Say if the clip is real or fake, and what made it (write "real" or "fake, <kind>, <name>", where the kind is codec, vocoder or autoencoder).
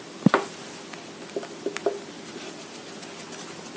real